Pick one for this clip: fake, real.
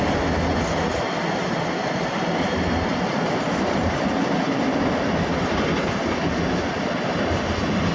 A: real